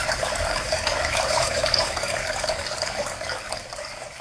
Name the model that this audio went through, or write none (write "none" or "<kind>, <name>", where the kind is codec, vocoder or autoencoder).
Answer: codec, DAC